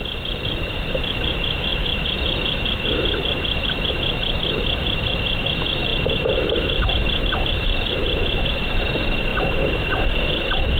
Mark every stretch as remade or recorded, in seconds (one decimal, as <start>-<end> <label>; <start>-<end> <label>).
0.0-1.7 remade; 1.7-3.9 recorded; 3.9-10.8 remade